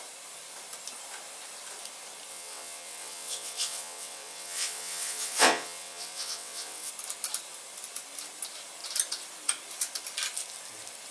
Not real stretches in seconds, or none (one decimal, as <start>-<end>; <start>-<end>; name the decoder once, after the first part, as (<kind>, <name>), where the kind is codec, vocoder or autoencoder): 2.3-6.9 (vocoder, WaveNeXt)